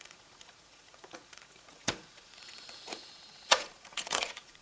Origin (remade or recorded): remade